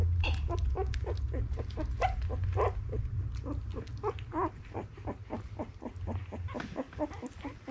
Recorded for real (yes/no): yes